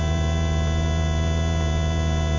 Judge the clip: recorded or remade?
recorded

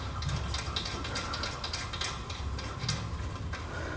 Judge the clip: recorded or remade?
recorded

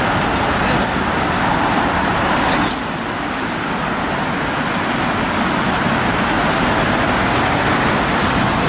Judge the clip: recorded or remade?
recorded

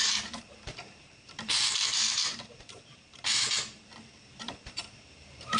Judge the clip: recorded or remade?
remade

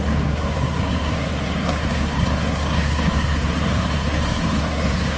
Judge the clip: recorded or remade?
remade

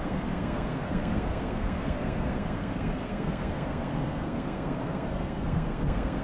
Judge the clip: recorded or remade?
remade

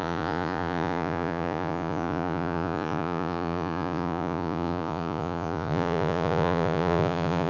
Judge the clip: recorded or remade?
remade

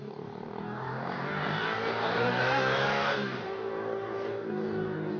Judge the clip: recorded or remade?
remade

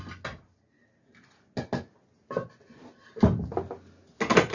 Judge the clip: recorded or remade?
recorded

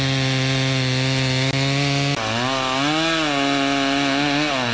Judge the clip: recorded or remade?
recorded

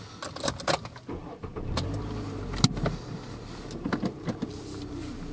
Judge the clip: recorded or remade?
recorded